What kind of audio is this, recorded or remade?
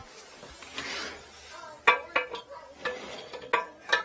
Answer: recorded